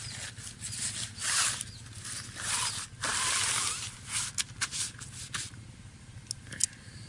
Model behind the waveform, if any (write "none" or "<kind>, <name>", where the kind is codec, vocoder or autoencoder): none